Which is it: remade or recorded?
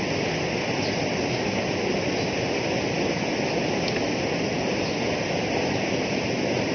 recorded